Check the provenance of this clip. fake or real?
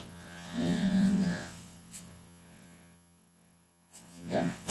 fake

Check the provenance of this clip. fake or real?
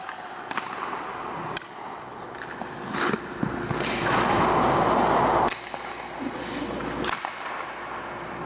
real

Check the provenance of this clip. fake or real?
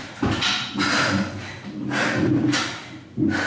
real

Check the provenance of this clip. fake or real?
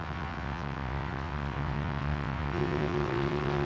fake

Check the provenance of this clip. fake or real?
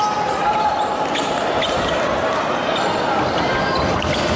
real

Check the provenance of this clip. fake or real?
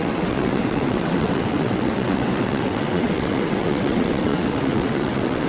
fake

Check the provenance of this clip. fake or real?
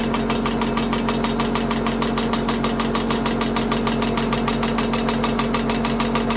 real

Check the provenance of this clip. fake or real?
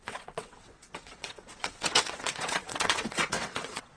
fake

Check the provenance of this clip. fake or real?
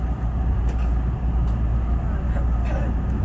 real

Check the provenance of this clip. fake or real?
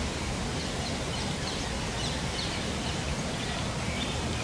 real